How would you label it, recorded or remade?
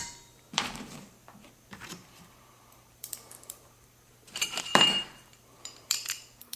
remade